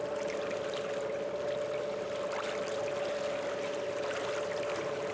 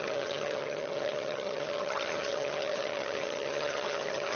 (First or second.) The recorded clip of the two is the first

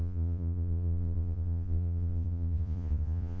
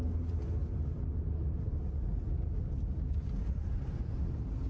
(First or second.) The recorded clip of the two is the second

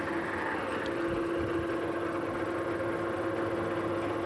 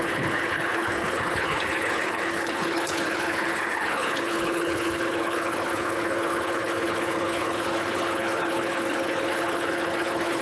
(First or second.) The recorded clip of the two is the first